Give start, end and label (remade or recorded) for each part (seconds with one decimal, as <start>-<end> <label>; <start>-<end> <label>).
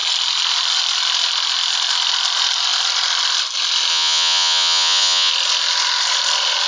0.0-3.9 recorded; 3.9-5.3 remade; 5.3-6.7 recorded